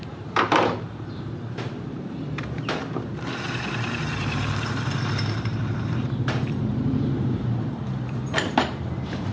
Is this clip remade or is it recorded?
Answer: remade